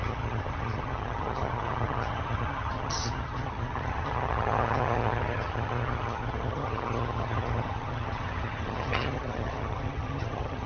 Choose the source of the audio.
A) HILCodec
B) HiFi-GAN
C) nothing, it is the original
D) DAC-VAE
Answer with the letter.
B